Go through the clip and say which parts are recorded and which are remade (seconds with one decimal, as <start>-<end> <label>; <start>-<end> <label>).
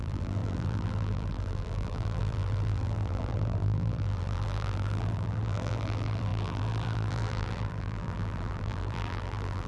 0.0-9.7 remade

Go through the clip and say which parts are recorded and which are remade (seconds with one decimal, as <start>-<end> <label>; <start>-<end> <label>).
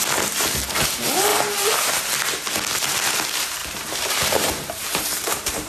0.0-1.3 recorded; 1.3-1.9 remade; 1.9-3.6 recorded; 3.6-5.7 remade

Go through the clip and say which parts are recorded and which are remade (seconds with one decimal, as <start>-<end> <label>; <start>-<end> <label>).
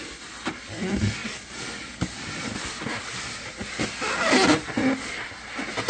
0.0-1.2 recorded; 1.2-4.3 remade; 4.3-5.9 recorded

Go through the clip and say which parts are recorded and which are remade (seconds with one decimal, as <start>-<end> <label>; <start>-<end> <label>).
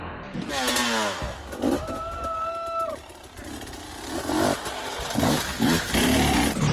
0.0-6.7 recorded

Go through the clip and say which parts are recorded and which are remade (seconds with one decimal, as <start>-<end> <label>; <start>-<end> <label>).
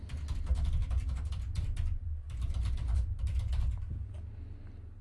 0.0-0.8 recorded; 0.8-3.8 remade; 3.8-5.0 recorded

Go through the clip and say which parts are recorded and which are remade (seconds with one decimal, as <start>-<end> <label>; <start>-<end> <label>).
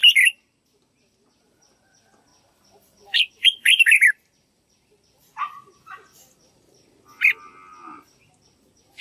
0.0-2.3 recorded; 2.3-7.2 remade; 7.2-9.0 recorded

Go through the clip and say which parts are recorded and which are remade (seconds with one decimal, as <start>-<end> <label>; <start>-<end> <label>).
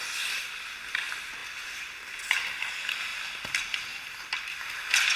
0.0-1.4 recorded; 1.4-2.7 remade; 2.7-3.1 recorded; 3.1-4.3 remade; 4.3-5.2 recorded